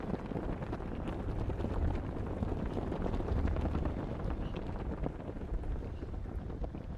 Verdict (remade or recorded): recorded